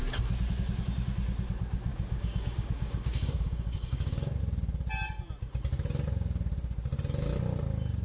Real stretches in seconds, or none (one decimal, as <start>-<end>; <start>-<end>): 0.0-1.9; 4.4-8.0